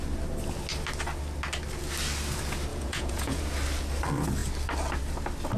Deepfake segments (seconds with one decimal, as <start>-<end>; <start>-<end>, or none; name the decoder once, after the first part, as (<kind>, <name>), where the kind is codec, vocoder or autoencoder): 2.7-3.4 (vocoder, Vocos)